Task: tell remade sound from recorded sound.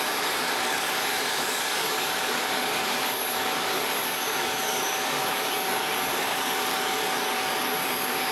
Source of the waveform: remade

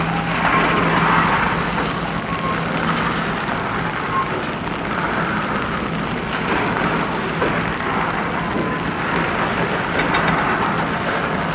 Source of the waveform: recorded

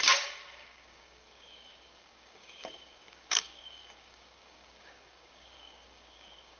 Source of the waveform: remade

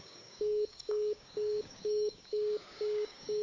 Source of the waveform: remade